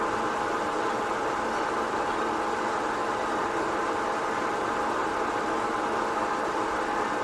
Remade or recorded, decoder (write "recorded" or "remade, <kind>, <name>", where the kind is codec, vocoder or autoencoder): remade, vocoder, BigVGAN v2